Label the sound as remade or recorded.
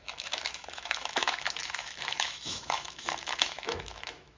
remade